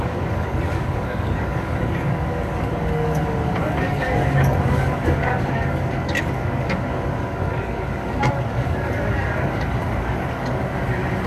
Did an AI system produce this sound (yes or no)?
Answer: yes